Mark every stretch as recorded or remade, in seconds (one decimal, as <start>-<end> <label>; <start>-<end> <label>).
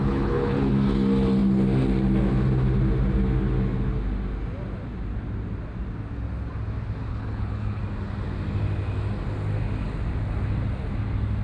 0.0-0.7 remade; 0.7-7.1 recorded; 7.1-7.8 remade; 7.8-11.4 recorded